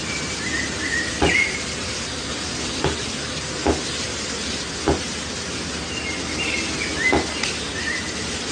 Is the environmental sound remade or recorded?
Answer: recorded